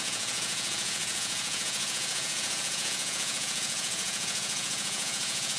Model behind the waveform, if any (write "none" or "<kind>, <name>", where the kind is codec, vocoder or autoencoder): vocoder, Vocos